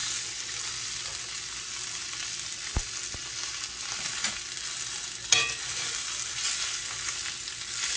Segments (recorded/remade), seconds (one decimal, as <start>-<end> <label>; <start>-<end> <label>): 0.0-8.0 recorded